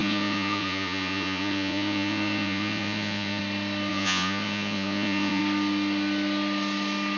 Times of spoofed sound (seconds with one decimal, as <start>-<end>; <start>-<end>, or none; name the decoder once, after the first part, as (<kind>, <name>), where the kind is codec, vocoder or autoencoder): 0.0-3.4 (vocoder, Vocos); 3.9-5.4